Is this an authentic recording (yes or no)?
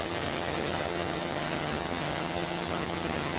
no